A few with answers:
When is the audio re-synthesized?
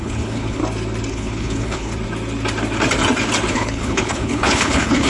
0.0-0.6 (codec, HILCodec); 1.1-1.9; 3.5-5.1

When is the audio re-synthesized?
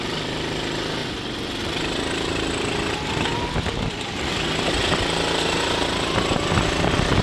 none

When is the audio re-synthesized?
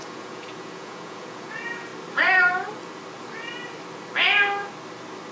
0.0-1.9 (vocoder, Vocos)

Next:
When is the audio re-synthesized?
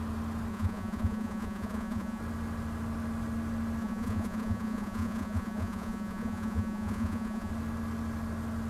0.5-2.2 (vocoder, Vocos); 3.8-7.5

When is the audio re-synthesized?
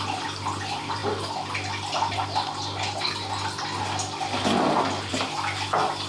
none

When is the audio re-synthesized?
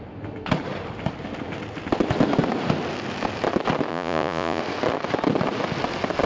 3.9-4.6 (vocoder, Vocos)